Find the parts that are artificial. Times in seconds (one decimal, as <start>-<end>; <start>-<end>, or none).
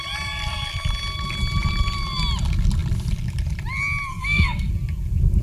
4.1-4.7